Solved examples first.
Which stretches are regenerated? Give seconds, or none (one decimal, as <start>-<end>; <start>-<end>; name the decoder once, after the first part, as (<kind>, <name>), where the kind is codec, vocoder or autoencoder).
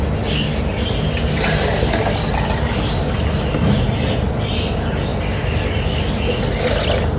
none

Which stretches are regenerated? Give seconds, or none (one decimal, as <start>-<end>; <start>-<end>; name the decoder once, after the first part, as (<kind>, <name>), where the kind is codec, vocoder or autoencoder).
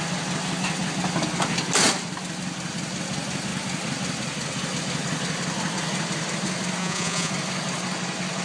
6.8-7.3 (vocoder, Vocos)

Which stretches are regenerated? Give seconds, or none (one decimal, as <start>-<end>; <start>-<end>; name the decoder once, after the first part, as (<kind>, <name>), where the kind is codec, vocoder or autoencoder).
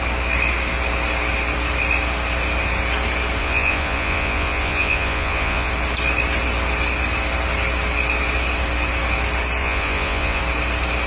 3.4-5.7 (vocoder, Vocos); 9.6-10.4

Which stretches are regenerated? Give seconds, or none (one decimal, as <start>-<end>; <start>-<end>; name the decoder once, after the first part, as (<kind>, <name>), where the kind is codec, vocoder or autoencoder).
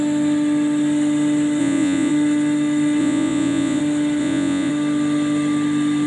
1.6-2.1 (vocoder, Vocos); 3.0-3.8; 4.2-4.7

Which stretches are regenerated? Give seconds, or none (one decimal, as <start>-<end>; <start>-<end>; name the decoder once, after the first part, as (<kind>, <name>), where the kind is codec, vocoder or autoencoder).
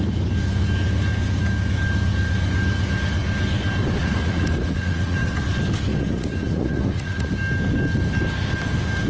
4.0-5.4 (vocoder, Vocos); 5.9-7.3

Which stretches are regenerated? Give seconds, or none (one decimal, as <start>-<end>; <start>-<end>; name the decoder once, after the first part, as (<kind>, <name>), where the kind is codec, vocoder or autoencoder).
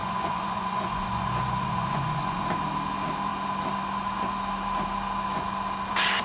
0.0-2.4 (vocoder, Vocos)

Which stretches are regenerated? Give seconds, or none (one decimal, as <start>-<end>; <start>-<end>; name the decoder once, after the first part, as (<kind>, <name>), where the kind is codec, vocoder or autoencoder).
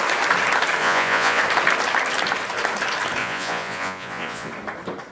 0.8-1.4 (vocoder, Vocos); 3.2-4.5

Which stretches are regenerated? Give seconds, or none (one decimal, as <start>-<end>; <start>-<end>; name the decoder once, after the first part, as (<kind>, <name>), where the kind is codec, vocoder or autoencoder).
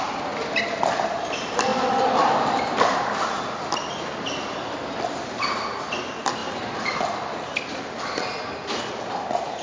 none